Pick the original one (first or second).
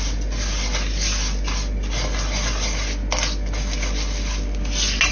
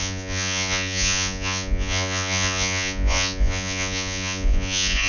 first